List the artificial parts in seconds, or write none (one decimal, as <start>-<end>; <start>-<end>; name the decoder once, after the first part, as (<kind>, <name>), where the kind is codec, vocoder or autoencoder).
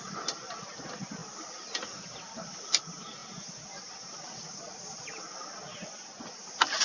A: none